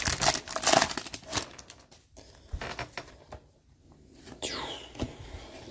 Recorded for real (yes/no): yes